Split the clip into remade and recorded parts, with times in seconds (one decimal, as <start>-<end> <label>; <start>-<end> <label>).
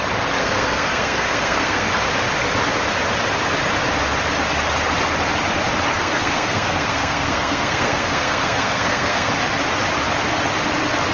0.0-0.4 recorded; 0.4-1.9 remade; 1.9-5.9 recorded; 5.9-9.3 remade; 9.3-11.1 recorded